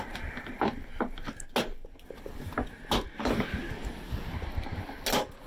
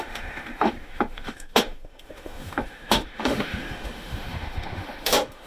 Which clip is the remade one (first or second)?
second